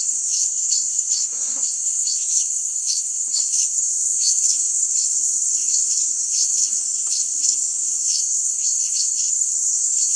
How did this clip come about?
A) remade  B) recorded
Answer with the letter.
A